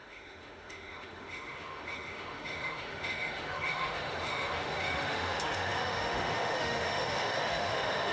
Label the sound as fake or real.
fake